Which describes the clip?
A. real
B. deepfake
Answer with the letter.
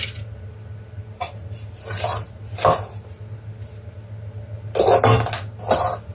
A